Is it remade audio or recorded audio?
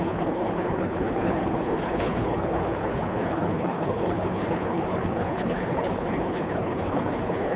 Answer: remade